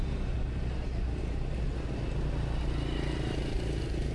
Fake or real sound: real